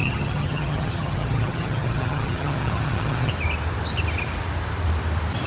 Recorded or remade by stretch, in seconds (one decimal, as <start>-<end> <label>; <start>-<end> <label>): 0.0-3.3 remade; 3.3-5.5 recorded